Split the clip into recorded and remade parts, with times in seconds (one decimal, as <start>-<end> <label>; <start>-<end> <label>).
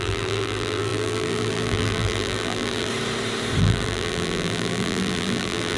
0.0-2.9 remade; 2.9-3.6 recorded; 3.6-5.8 remade